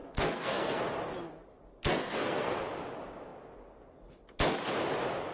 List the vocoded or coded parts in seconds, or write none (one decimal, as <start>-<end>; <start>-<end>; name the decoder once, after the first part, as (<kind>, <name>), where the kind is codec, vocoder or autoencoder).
0.0-0.8 (codec, SNAC); 1.8-2.6